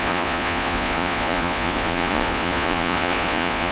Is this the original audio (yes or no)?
no